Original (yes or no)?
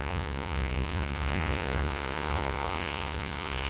no